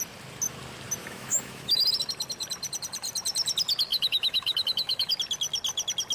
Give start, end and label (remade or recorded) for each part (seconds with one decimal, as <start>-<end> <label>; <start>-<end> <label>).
0.0-1.0 recorded; 1.0-1.8 remade; 1.8-3.9 recorded; 3.9-5.1 remade; 5.1-6.1 recorded